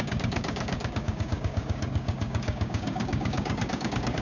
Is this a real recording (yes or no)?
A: no